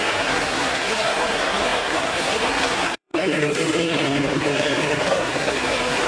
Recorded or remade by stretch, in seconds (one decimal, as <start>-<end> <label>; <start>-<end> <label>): 0.0-6.1 remade